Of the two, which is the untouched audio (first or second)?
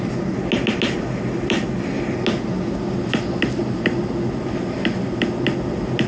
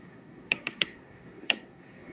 first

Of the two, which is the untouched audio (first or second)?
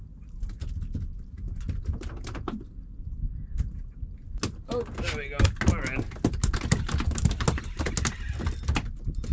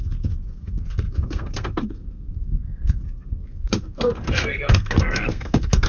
first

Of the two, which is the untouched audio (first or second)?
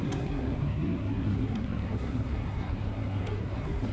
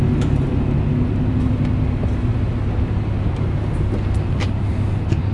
second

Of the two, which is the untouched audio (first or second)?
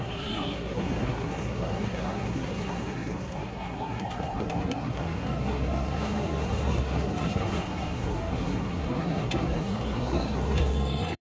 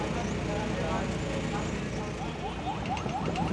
second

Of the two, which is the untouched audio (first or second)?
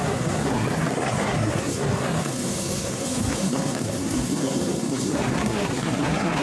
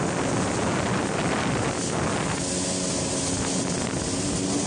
second